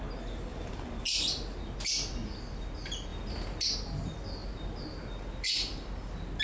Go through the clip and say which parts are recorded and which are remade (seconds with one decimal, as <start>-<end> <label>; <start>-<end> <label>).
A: 0.0-6.4 recorded